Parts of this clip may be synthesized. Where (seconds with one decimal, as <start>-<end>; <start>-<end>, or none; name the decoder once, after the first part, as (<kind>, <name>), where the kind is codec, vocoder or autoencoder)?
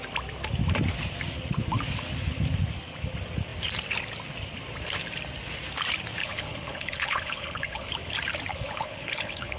6.2-7.9 (codec, HILCodec); 8.5-9.6